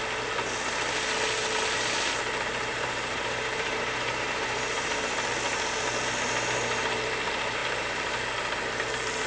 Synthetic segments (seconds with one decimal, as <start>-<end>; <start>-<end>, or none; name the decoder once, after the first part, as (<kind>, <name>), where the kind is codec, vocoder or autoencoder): 2.7-5.0 (vocoder, BigVGAN v2); 7.6-8.2

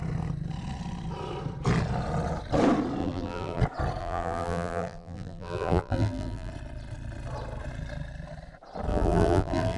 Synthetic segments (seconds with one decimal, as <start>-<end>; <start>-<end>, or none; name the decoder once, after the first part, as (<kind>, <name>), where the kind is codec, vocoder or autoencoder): 3.0-3.6 (vocoder, BigVGAN v2); 4.0-6.5; 8.9-9.8

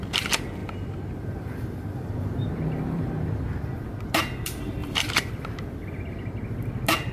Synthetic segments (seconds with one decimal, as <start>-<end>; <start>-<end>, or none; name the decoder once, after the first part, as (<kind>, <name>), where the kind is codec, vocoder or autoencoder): 0.6-3.6 (vocoder, BigVGAN v2); 4.8-5.3

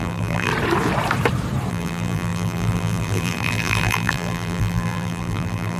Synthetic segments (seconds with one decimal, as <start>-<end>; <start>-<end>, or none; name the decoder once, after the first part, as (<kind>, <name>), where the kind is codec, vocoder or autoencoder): 0.0-0.5 (vocoder, BigVGAN v2); 1.7-5.8

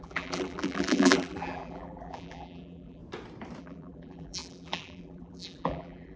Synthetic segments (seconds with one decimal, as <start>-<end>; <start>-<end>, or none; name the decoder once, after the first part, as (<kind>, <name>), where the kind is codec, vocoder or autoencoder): 0.0-3.0 (vocoder, BigVGAN v2); 3.6-6.2

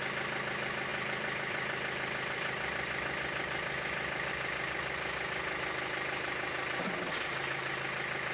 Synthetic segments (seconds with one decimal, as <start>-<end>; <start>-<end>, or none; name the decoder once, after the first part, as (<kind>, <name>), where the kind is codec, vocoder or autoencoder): 0.9-4.3 (vocoder, BigVGAN v2)

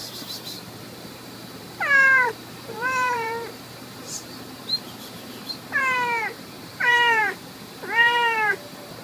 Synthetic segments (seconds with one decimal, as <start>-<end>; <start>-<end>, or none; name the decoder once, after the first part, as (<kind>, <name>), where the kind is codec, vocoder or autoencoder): 0.0-9.0 (vocoder, BigVGAN v2)